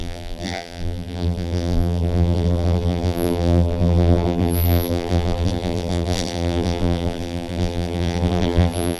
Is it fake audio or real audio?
fake